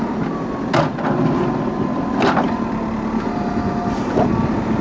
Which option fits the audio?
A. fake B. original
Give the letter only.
B